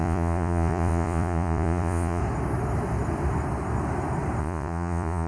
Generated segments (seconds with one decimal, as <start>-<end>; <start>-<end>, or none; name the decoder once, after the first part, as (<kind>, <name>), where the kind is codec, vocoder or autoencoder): 0.0-2.2 (vocoder, Vocos); 4.4-5.3